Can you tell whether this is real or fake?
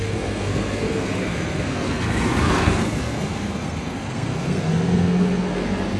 fake